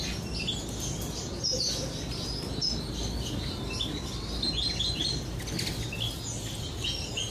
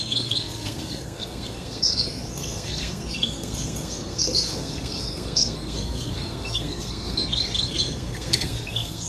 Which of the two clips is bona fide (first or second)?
first